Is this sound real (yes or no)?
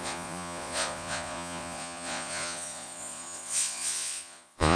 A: no